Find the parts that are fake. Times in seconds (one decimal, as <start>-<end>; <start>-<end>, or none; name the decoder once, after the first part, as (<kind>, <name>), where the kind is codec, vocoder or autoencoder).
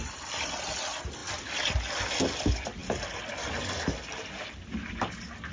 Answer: none